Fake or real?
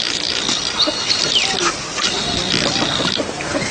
real